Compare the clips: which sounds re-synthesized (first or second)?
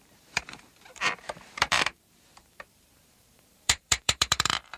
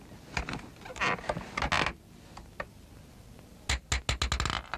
first